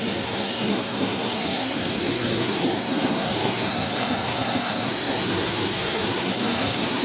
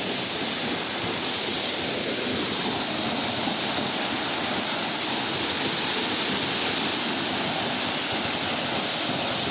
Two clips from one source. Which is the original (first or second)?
second